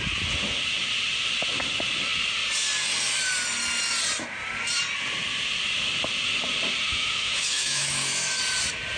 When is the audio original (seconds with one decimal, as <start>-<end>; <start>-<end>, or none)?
0.0-6.9; 8.4-9.0